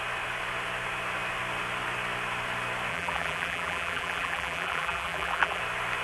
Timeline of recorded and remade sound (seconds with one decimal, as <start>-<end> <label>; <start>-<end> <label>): 0.0-2.9 recorded; 2.9-5.6 remade; 5.6-6.0 recorded